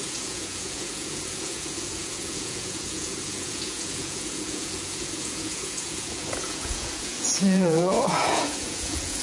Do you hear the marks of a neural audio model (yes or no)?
yes